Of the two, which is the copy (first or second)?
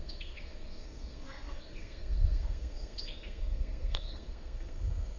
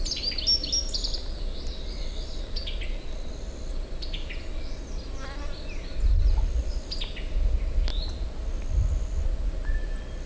first